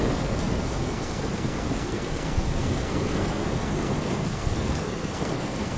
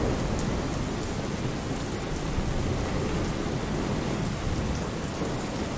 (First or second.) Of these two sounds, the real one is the second